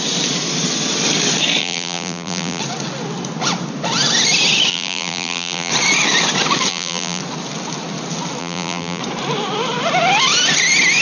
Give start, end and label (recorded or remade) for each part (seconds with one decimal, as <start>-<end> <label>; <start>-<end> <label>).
0.0-1.6 recorded; 1.6-2.6 remade; 2.6-4.7 recorded; 4.7-5.7 remade; 5.7-6.7 recorded; 6.7-7.2 remade; 7.2-8.4 recorded; 8.4-9.0 remade; 9.0-11.0 recorded